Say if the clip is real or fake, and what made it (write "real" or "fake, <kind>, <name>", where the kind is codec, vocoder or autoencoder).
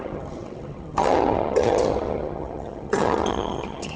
fake, vocoder, HiFi-GAN